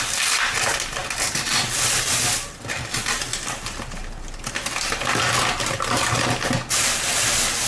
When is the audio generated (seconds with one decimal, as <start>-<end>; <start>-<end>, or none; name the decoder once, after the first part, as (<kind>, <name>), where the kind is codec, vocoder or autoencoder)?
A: 1.0-1.9 (vocoder, BigVGAN v2)